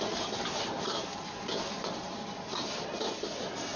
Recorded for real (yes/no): yes